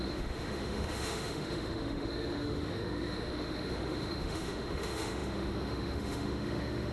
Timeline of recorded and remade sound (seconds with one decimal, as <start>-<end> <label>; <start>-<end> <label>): 0.0-6.9 remade